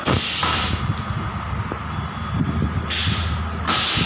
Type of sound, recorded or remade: recorded